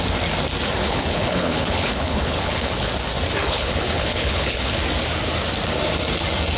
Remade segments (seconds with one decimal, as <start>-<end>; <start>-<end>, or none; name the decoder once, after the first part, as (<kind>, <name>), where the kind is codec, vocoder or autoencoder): 0.8-2.9 (codec, HILCodec); 3.4-4.7